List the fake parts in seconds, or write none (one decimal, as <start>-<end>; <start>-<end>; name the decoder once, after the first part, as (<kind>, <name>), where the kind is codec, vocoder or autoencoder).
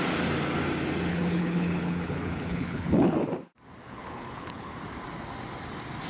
1.1-3.2 (codec, HILCodec); 3.8-4.7